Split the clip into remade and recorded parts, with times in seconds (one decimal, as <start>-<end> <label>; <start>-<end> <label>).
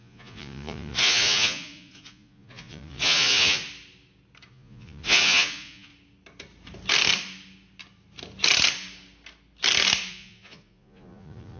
0.0-3.6 remade; 3.6-4.5 recorded; 4.5-5.9 remade; 5.9-10.1 recorded; 10.1-11.6 remade